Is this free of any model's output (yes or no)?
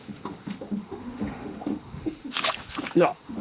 no